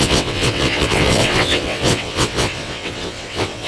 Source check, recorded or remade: remade